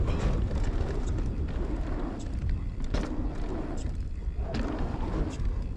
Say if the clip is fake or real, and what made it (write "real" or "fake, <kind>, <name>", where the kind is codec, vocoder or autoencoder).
real